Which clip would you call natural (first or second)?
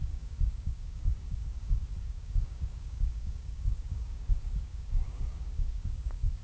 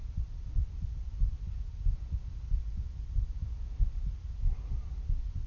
second